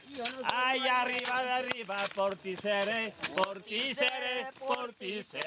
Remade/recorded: recorded